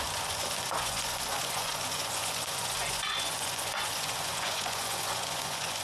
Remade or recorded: remade